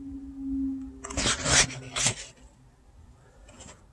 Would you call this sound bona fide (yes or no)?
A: yes